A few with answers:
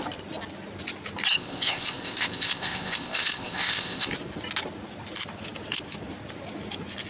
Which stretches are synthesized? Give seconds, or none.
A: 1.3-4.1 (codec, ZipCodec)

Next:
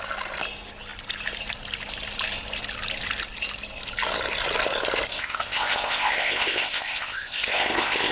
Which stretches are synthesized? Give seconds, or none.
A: 5.1-8.1 (codec, ZipCodec)

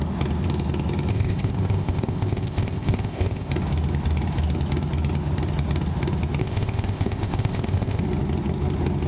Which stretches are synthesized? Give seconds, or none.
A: 1.1-3.5 (codec, ZipCodec); 6.4-8.0

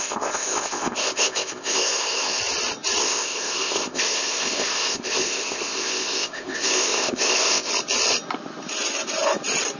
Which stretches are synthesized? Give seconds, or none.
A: 0.0-2.4 (codec, ZipCodec); 3.0-7.7

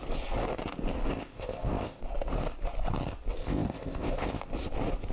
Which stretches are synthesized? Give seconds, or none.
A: 1.1-2.0 (codec, ZipCodec); 3.4-4.4

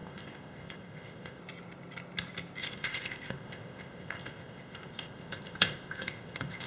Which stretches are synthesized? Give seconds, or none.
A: 0.0-1.4 (codec, ZipCodec); 2.6-6.7